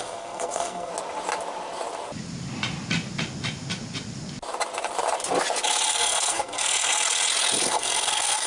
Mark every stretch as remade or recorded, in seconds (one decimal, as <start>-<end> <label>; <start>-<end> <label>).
0.0-0.9 remade; 0.9-5.9 recorded; 5.9-6.9 remade; 6.9-7.7 recorded; 7.7-8.5 remade